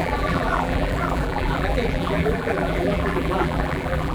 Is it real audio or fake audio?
fake